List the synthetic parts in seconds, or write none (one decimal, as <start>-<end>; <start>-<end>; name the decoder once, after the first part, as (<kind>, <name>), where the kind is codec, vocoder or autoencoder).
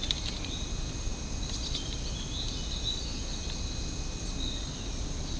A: none